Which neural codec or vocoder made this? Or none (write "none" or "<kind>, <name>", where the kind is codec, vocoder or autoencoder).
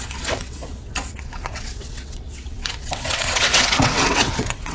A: vocoder, WaveNeXt